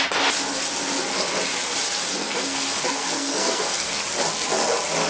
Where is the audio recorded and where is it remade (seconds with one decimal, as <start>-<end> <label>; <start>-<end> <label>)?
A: 0.0-2.2 recorded; 2.2-4.0 remade; 4.0-5.1 recorded

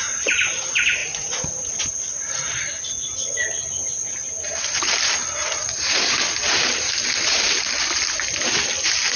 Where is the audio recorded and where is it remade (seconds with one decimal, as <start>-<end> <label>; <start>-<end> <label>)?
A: 0.0-1.0 recorded; 1.0-1.8 remade; 1.8-5.4 recorded; 5.4-6.0 remade; 6.0-9.2 recorded

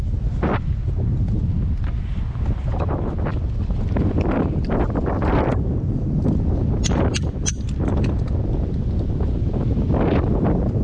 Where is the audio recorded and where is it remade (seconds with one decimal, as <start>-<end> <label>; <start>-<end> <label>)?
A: 0.0-10.8 recorded

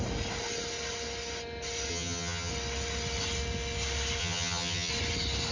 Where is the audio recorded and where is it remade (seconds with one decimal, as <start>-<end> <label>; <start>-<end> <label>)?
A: 0.0-1.9 recorded; 1.9-2.5 remade; 2.5-4.2 recorded; 4.2-4.9 remade; 4.9-5.5 recorded

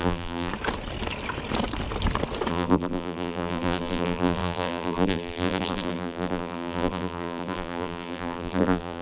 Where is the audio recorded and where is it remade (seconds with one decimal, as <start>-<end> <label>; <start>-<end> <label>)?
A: 0.0-0.5 remade; 0.5-2.5 recorded; 2.5-9.0 remade

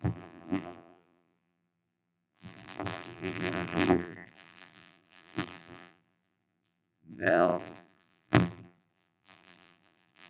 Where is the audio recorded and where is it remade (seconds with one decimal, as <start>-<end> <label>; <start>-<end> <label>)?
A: 0.0-10.3 remade